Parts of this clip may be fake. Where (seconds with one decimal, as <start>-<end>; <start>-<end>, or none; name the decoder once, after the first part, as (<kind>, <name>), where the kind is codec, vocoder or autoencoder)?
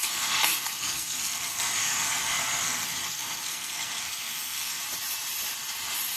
0.0-4.8 (codec, SNAC)